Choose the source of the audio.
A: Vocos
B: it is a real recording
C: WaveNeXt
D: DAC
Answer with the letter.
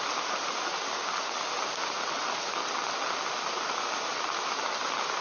B